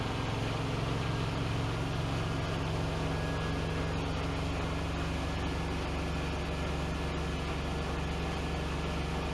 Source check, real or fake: real